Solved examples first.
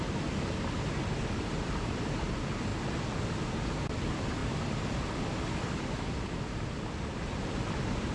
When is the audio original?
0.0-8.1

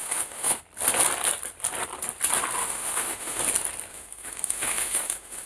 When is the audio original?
0.6-2.6; 3.4-3.9